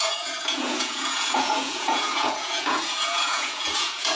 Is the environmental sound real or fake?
fake